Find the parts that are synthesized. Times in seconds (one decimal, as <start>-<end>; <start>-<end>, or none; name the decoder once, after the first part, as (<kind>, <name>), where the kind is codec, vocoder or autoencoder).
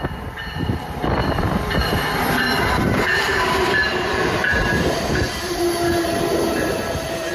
1.2-5.6 (vocoder, BigVGAN v2)